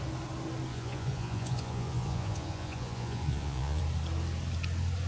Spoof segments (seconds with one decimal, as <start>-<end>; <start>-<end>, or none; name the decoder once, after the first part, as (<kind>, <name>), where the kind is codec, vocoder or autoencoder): 0.7-3.8 (vocoder, Vocos)